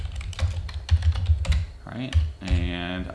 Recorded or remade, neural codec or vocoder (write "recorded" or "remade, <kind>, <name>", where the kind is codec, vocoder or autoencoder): recorded